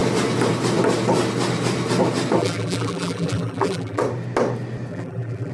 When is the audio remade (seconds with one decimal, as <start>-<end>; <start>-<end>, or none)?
2.4-4.0; 4.9-5.5